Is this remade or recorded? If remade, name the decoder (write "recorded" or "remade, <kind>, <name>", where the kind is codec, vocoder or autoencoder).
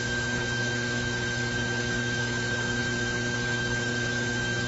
remade, autoencoder, DAC-VAE